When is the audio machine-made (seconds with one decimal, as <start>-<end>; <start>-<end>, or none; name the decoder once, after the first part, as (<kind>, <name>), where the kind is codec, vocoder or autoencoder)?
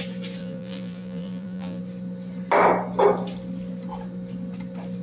0.4-1.8 (vocoder, BigVGAN v2)